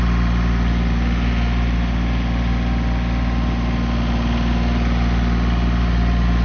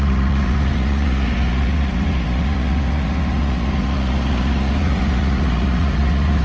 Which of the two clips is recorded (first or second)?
first